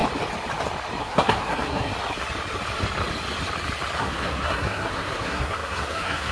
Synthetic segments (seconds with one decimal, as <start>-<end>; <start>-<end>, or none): 1.0-1.9; 4.0-6.3